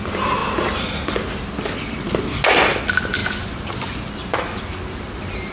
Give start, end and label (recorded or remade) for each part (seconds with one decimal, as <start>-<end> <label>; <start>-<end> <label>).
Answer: 0.0-5.5 recorded